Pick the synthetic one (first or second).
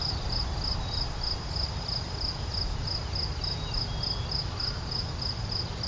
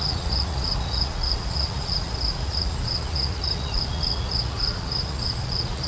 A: second